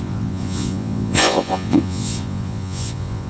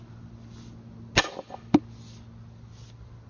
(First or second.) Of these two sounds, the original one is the second